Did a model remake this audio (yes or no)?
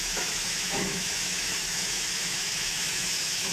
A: yes